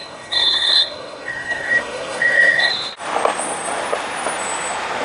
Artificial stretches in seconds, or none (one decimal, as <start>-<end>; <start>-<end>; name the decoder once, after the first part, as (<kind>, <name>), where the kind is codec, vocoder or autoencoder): 0.0-2.7 (codec, SNAC)